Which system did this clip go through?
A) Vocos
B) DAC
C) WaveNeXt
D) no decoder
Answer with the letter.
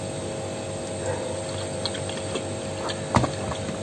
D